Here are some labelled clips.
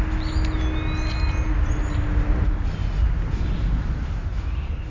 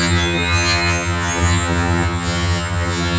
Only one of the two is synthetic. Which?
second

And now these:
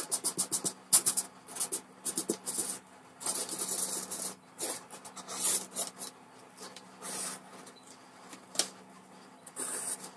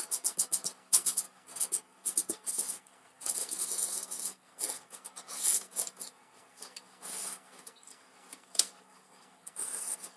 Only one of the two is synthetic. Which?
second